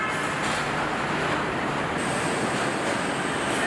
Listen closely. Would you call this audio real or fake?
real